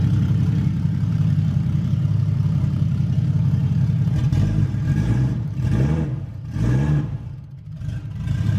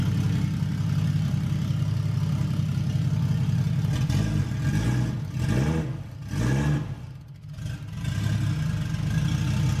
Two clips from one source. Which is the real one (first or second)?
second